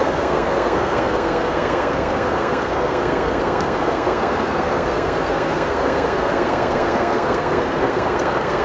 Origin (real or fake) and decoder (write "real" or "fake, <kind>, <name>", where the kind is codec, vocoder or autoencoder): fake, codec, SNAC